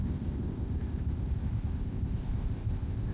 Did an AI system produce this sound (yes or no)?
yes